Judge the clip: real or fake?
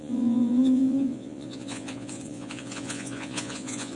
fake